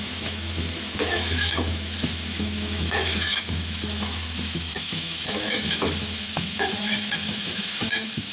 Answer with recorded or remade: remade